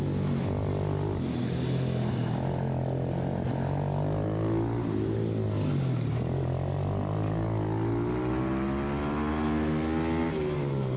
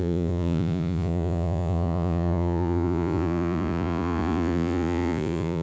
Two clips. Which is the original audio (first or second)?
first